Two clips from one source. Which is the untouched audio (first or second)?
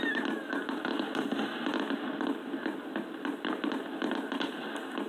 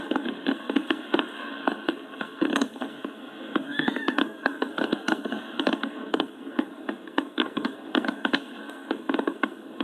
first